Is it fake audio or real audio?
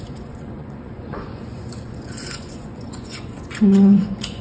fake